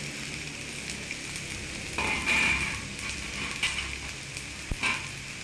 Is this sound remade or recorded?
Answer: recorded